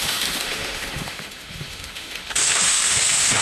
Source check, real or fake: fake